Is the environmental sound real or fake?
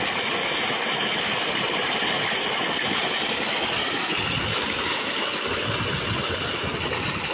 real